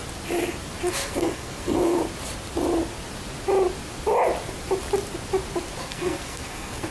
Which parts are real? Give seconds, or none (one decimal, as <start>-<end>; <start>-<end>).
0.0-0.9; 2.0-5.8